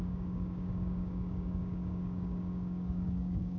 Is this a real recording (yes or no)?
no